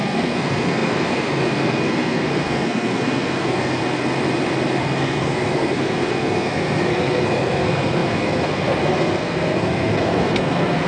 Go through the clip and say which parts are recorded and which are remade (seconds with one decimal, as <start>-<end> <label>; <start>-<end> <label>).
0.0-3.8 remade; 3.8-4.8 recorded; 4.8-10.9 remade